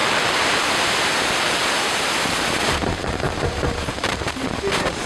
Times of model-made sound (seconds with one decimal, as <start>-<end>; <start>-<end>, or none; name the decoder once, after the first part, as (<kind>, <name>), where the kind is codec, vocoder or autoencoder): 2.5-5.1 (vocoder, BigVGAN v2)

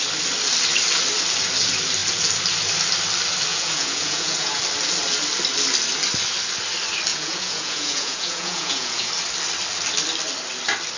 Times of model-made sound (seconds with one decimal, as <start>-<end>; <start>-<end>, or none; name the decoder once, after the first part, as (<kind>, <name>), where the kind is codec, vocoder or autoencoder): 3.5-4.6 (vocoder, Vocos); 7.1-9.1

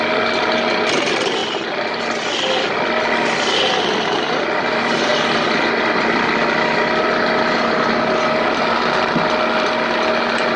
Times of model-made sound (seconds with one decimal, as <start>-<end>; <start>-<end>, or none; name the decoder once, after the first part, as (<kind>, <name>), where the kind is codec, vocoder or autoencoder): none

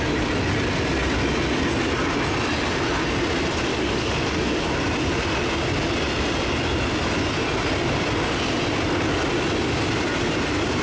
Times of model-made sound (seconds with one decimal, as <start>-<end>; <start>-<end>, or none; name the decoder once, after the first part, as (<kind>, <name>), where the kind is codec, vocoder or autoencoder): 3.7-4.7 (codec, DAC)